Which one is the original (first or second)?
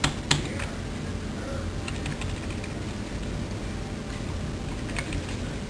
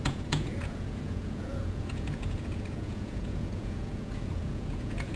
first